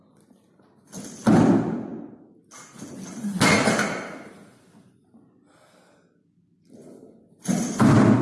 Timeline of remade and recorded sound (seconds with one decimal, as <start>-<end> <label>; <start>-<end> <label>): 0.0-8.2 recorded